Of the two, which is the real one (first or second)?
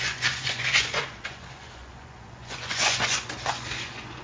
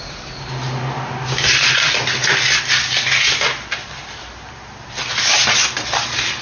second